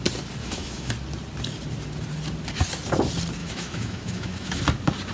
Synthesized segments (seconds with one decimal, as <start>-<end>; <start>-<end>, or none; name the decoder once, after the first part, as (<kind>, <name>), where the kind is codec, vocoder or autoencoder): 0.4-0.9 (autoencoder, DAC-VAE); 3.4-4.6